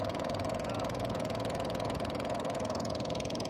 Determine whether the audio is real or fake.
fake